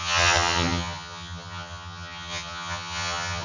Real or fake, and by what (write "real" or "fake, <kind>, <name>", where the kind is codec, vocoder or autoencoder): fake, vocoder, HiFi-GAN